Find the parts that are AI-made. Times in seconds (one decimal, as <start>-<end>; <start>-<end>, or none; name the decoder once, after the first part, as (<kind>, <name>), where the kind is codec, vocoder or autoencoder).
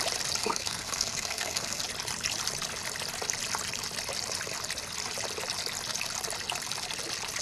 0.4-1.8 (codec, SNAC)